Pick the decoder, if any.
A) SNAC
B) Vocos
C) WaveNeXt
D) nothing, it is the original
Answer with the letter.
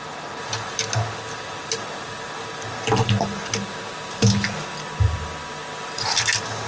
D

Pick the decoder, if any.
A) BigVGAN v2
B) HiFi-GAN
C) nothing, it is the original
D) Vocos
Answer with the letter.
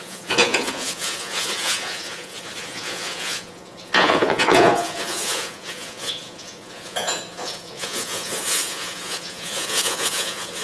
D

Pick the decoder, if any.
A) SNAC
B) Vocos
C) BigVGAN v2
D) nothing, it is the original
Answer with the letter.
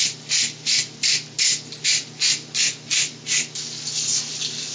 D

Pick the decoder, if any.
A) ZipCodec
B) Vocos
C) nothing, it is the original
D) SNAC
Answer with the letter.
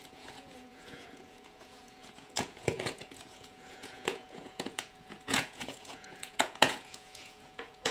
B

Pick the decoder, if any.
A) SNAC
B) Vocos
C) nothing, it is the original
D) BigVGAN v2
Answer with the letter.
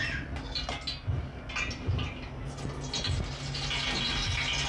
C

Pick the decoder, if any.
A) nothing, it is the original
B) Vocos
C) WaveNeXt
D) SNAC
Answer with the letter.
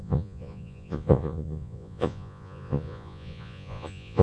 B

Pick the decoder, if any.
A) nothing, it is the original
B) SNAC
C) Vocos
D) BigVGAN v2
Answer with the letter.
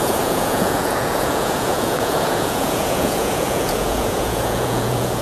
C